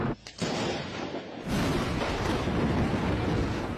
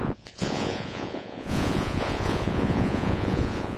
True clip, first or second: first